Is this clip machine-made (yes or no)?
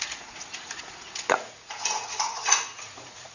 yes